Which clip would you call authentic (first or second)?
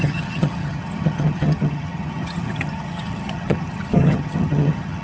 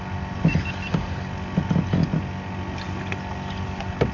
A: second